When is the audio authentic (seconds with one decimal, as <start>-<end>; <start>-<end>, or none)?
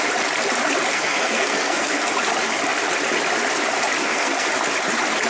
0.0-0.9; 2.1-4.0; 4.5-5.3